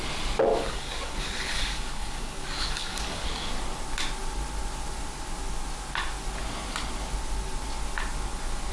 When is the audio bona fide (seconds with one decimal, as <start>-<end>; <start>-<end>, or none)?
0.0-0.5; 3.5-8.7